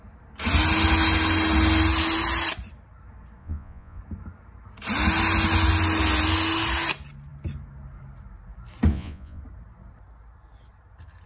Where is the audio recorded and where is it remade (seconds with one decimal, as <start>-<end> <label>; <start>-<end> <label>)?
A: 0.0-3.4 recorded; 3.4-4.0 remade; 4.0-8.9 recorded; 8.9-9.4 remade; 9.4-11.3 recorded